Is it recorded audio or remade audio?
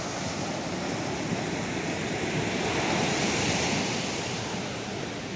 recorded